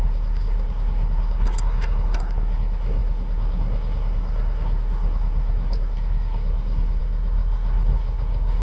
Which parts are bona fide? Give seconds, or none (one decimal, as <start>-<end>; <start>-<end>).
none

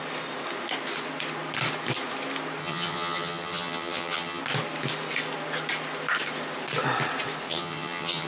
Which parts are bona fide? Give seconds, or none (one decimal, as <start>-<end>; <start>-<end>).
0.0-2.6; 4.4-7.5

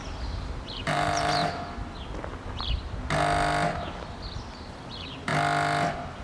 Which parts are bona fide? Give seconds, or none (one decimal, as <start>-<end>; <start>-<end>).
0.0-0.7; 1.4-4.7; 5.3-6.2

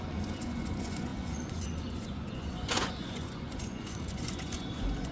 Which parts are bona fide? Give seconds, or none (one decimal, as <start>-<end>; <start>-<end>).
none

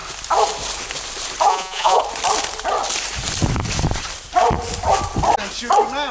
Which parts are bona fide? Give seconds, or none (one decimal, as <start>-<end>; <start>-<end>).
0.0-1.5; 2.0-6.1